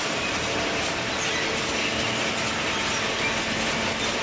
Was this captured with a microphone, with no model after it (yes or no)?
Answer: yes